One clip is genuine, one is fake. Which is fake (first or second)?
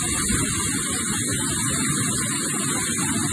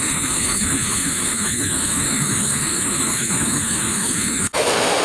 second